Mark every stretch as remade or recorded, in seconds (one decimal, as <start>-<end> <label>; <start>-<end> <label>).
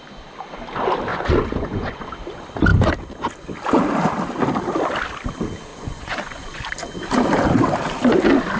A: 0.0-1.1 recorded; 1.1-2.1 remade; 2.1-5.7 recorded; 5.7-6.7 remade; 6.7-8.6 recorded